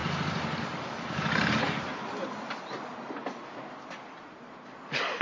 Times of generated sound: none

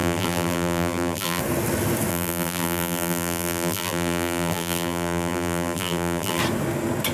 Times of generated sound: 0.0-1.4 (vocoder, BigVGAN v2); 2.1-6.4

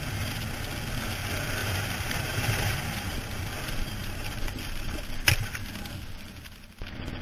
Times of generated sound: 1.6-3.1 (vocoder, BigVGAN v2); 4.0-4.5

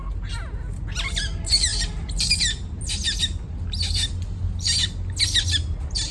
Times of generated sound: 1.7-2.3 (vocoder, BigVGAN v2)

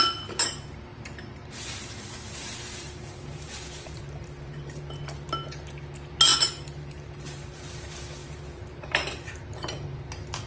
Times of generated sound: 0.9-4.8 (vocoder, BigVGAN v2); 6.3-7.6; 8.2-10.1

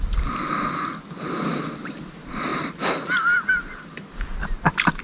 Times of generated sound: 2.5-4.1 (vocoder, BigVGAN v2)